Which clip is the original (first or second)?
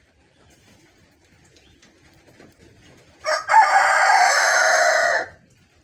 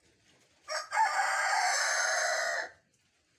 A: second